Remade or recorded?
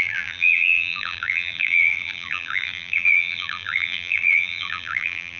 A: remade